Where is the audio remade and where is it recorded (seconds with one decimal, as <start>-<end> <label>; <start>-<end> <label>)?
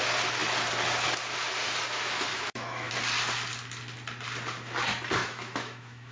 0.0-2.3 recorded; 2.3-2.9 remade; 2.9-5.2 recorded; 5.2-6.1 remade